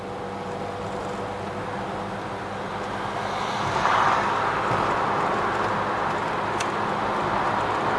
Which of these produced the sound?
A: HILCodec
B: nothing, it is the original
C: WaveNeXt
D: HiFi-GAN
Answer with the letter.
B